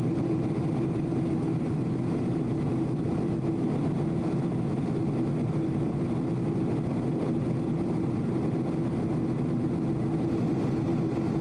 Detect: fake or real real